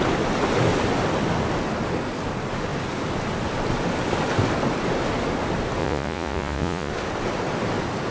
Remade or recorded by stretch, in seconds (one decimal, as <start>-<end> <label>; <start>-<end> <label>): 0.0-5.8 recorded; 5.8-6.9 remade; 6.9-8.1 recorded